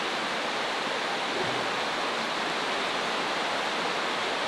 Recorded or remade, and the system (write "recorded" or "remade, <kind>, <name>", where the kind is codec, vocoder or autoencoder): recorded